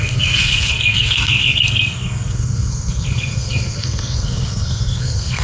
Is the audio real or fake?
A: fake